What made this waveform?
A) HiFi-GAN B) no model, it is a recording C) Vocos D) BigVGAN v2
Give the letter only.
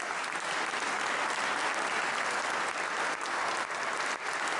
B